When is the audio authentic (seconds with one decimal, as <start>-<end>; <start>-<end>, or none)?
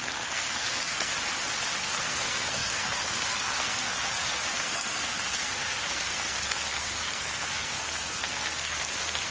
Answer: 1.1-1.8